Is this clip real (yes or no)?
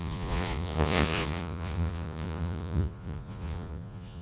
no